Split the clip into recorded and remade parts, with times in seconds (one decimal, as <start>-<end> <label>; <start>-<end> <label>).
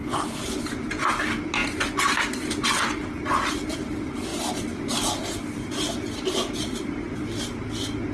0.0-0.6 remade; 0.6-8.1 recorded